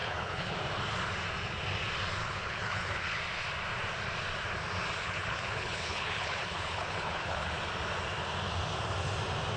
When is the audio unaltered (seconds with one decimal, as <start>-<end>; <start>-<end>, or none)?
0.5-2.2; 3.2-5.0; 7.5-9.6